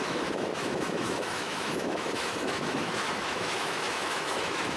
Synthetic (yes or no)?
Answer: yes